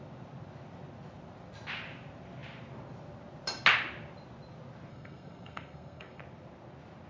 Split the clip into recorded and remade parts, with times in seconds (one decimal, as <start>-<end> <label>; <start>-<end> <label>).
0.0-4.9 recorded; 4.9-6.2 remade; 6.2-7.1 recorded